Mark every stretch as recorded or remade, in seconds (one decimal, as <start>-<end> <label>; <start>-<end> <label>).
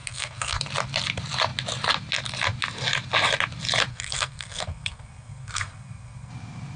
0.0-0.6 remade; 0.6-3.9 recorded; 3.9-6.3 remade; 6.3-6.8 recorded